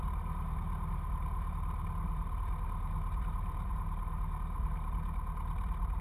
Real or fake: real